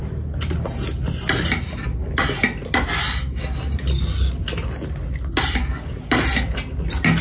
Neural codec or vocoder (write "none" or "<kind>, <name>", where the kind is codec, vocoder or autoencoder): none